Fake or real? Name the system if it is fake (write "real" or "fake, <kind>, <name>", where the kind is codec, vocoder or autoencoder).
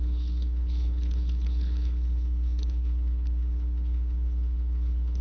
fake, codec, HILCodec